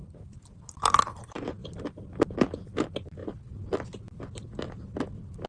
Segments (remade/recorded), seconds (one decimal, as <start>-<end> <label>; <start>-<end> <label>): 0.0-5.5 recorded